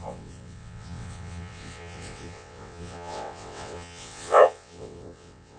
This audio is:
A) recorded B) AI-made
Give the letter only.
B